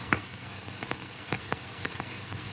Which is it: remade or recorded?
remade